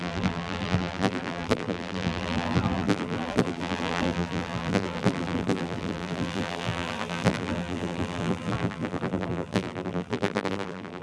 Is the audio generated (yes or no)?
yes